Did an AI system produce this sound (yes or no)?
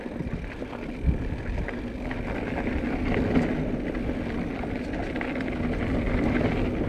no